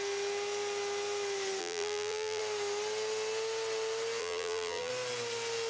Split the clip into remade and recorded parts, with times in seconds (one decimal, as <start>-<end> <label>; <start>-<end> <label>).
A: 0.0-1.6 recorded; 1.6-2.4 remade; 2.4-4.2 recorded; 4.2-4.9 remade; 4.9-5.7 recorded

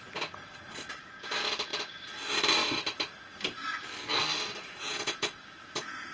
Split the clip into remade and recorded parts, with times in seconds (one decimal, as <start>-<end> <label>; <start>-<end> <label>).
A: 0.0-4.6 recorded; 4.6-6.1 remade

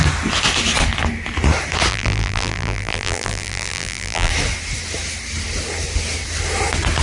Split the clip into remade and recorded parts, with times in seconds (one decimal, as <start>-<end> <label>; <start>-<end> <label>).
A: 0.0-1.9 recorded; 1.9-4.3 remade; 4.3-7.0 recorded

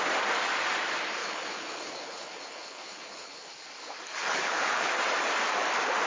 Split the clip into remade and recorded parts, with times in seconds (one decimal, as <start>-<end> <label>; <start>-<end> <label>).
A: 0.0-1.2 recorded; 1.2-3.5 remade; 3.5-4.2 recorded; 4.2-4.9 remade; 4.9-6.1 recorded

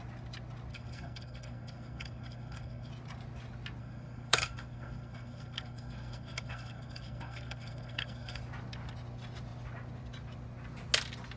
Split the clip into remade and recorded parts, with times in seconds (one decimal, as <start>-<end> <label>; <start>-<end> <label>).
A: 0.0-0.7 recorded; 0.7-2.9 remade; 2.9-3.8 recorded; 3.8-8.4 remade; 8.4-11.4 recorded

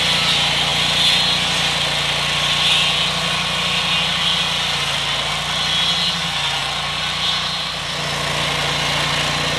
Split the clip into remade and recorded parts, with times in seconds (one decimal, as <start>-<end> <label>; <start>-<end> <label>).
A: 0.0-6.6 recorded; 6.6-7.8 remade; 7.8-9.6 recorded

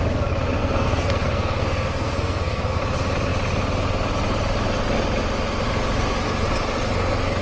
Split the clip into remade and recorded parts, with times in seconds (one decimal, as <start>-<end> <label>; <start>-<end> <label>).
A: 0.0-0.6 recorded; 0.6-2.8 remade; 2.8-7.4 recorded

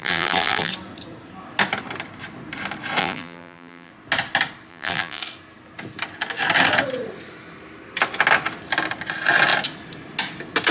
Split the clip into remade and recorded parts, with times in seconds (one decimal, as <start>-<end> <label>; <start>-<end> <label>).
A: 0.0-0.7 remade; 0.7-3.0 recorded; 3.0-3.9 remade; 3.9-4.7 recorded; 4.7-5.2 remade; 5.2-10.7 recorded